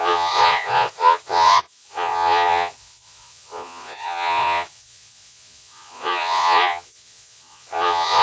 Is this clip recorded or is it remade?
remade